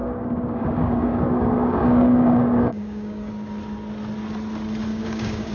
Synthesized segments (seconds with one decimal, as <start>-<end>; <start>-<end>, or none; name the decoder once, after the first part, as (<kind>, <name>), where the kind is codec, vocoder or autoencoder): 0.0-3.3 (codec, DAC); 4.9-5.5